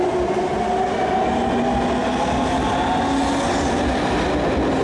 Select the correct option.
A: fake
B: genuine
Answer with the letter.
B